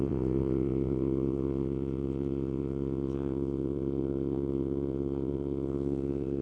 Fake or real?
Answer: fake